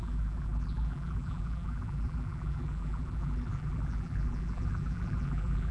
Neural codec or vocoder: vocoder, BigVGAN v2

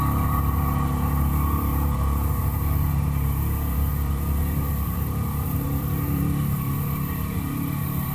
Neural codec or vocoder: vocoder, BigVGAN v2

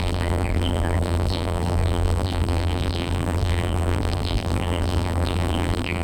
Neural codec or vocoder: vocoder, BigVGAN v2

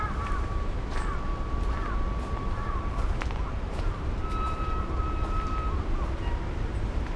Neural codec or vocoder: vocoder, BigVGAN v2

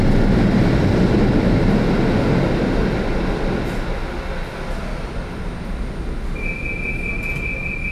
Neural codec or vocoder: none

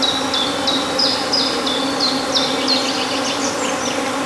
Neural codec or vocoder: none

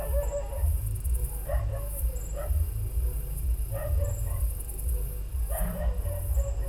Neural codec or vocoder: none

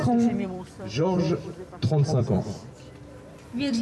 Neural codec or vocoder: vocoder, BigVGAN v2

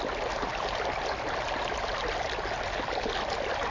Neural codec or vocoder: none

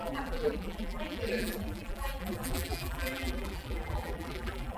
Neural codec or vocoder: vocoder, BigVGAN v2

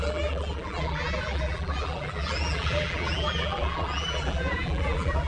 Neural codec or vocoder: vocoder, BigVGAN v2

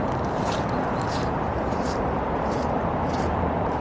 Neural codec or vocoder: vocoder, BigVGAN v2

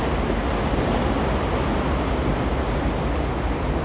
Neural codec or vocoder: none